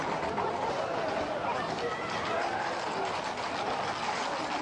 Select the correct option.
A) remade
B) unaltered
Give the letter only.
B